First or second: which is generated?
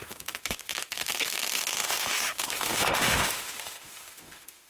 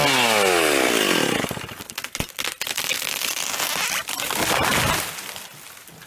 first